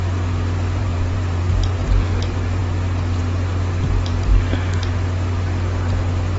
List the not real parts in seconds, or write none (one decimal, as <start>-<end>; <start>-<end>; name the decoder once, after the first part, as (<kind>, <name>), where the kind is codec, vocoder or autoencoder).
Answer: 0.8-1.5 (vocoder, BigVGAN v2)

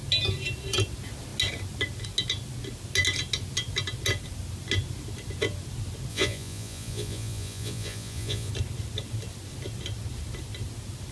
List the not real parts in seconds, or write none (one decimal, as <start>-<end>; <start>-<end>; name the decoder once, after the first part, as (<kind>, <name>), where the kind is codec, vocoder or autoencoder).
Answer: 6.1-8.5 (vocoder, Vocos)